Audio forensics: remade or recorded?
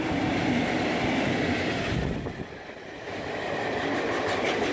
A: recorded